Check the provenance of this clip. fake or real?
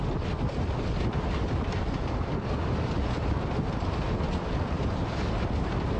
real